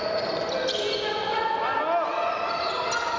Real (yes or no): yes